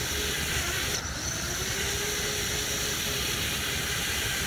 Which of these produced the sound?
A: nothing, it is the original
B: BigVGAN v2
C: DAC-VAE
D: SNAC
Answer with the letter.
A